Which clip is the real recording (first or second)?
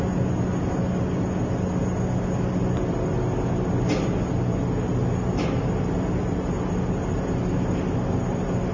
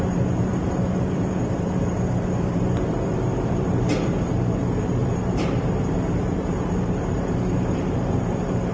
first